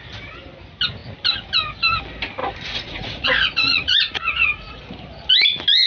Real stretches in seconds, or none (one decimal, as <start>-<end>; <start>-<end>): 0.0-2.4; 4.8-5.9